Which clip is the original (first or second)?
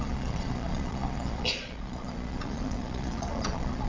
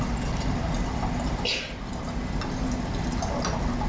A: second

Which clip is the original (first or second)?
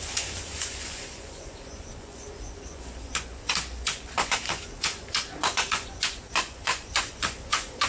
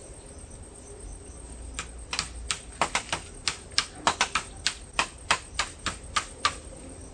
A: second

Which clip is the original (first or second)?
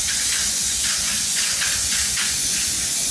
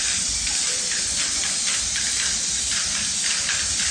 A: second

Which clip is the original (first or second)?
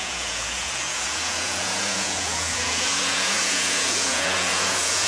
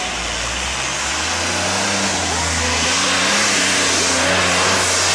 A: second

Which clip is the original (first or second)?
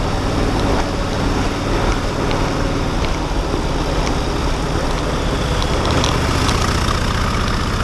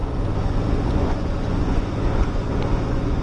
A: first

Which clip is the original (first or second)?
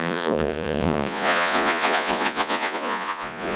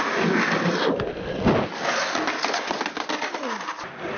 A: second